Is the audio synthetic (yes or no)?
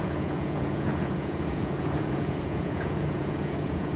yes